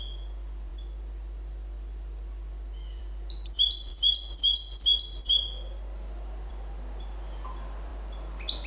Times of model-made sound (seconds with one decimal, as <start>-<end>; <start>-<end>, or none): none